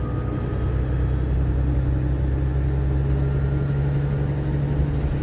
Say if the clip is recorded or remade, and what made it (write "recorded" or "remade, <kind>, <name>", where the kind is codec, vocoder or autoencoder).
recorded